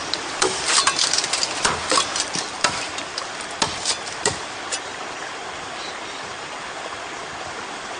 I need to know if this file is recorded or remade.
recorded